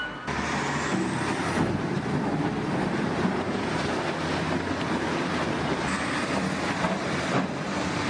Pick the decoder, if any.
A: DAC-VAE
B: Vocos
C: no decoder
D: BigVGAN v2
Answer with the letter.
C